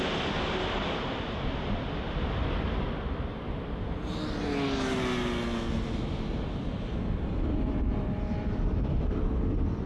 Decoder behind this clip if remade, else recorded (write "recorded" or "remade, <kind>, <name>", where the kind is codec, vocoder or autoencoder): recorded